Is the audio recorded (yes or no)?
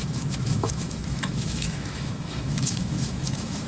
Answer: no